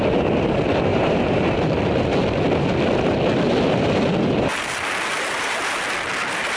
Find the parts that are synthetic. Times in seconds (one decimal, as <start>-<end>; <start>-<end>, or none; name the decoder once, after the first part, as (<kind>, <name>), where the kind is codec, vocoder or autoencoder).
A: 0.9-1.6 (vocoder, BigVGAN v2)